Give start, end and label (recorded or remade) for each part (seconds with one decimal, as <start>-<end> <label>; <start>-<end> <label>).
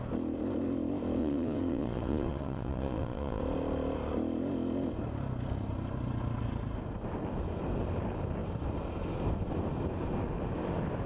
0.0-1.2 recorded; 1.2-3.4 remade; 3.4-11.1 recorded